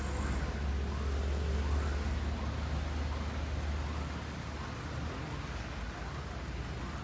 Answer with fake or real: real